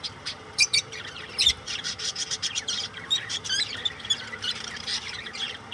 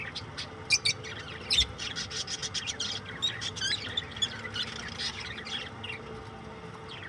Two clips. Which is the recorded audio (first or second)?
second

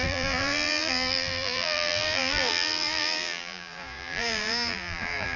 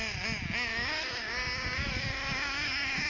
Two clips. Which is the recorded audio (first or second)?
second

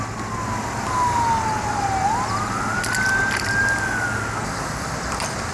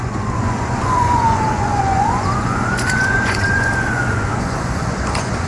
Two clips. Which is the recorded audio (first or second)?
first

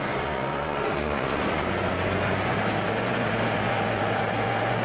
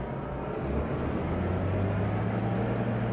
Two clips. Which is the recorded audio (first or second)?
second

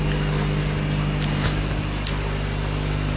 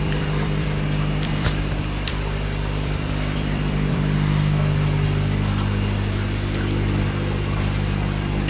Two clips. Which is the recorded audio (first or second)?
first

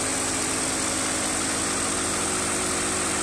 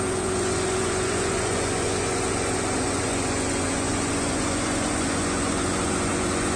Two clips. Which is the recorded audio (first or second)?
first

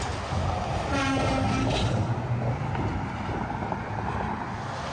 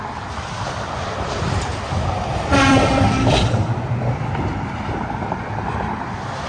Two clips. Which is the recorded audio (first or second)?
first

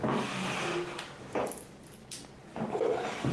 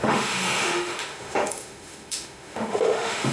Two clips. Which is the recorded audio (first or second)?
first